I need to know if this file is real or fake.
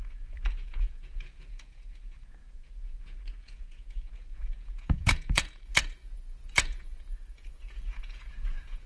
fake